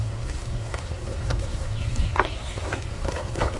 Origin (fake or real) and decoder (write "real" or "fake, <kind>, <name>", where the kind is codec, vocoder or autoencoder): fake, codec, SNAC